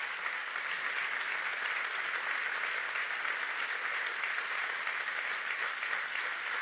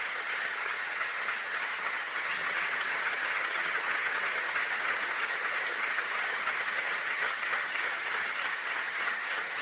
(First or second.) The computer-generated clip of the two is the second